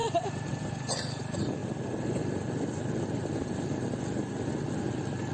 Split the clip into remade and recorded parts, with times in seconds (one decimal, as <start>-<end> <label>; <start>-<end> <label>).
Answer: 0.0-1.2 remade; 1.2-5.3 recorded